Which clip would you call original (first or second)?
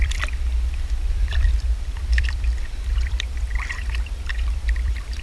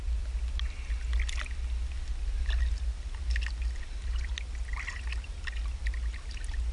second